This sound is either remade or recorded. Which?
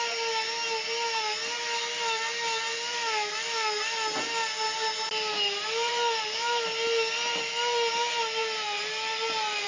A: recorded